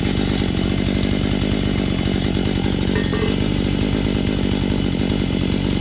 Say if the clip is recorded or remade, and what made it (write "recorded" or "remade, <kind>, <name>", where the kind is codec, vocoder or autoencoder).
recorded